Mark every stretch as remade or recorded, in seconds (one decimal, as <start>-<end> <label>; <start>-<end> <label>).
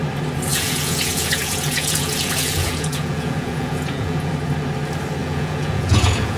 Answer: 0.0-0.5 recorded; 0.5-4.3 remade; 4.3-5.2 recorded; 5.2-6.4 remade